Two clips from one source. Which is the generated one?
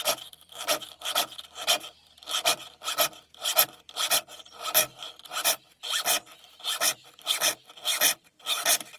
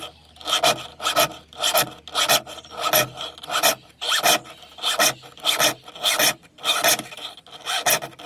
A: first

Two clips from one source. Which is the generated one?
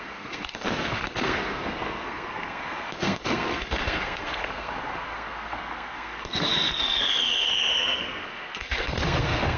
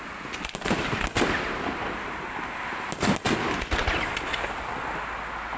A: first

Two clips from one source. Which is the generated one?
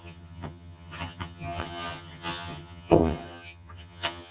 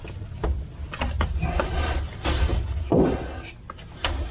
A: first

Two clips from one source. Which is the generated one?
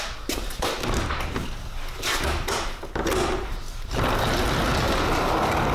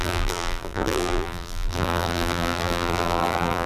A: second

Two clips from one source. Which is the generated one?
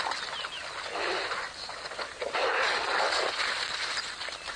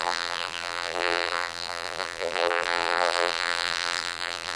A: second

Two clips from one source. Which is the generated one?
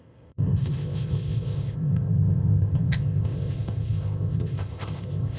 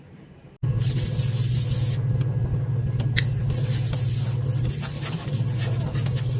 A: first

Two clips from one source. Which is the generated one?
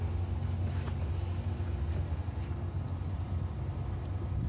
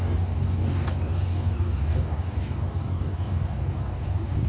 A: second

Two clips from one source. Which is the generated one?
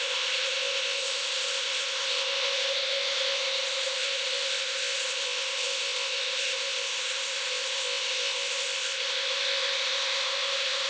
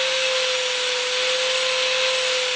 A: first